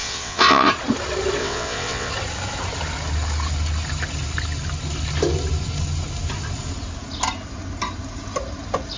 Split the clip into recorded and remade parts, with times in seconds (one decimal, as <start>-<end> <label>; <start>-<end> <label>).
0.0-0.7 remade; 0.7-1.4 recorded; 1.4-2.1 remade; 2.1-9.0 recorded